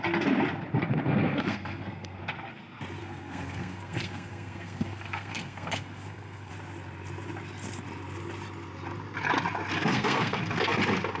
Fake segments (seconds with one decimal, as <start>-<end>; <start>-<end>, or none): 0.9-2.2; 3.0-6.5; 9.9-10.4